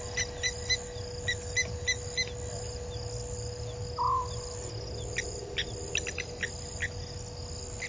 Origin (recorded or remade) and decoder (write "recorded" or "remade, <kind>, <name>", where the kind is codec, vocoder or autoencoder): recorded